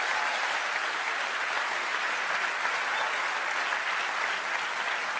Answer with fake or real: real